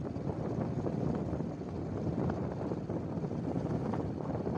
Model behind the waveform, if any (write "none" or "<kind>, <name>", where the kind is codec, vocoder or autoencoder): none